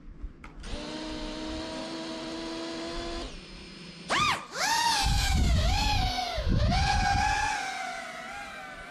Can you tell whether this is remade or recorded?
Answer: recorded